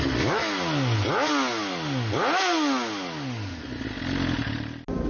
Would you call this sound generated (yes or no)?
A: no